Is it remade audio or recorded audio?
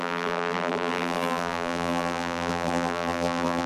remade